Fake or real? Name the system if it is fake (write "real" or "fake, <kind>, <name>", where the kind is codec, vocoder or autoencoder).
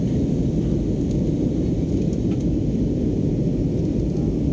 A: real